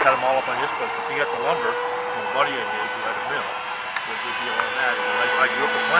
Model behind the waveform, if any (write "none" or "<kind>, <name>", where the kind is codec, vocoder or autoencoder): none